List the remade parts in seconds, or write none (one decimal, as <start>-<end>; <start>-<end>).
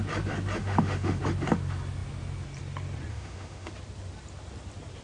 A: 0.6-1.2; 3.1-3.7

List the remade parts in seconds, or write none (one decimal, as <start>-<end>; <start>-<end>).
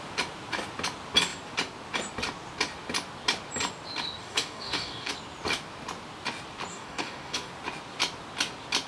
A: 4.2-5.1; 6.7-7.5